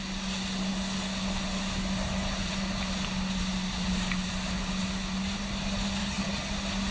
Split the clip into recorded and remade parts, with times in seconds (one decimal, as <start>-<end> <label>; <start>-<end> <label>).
0.0-6.0 recorded; 6.0-6.5 remade; 6.5-6.9 recorded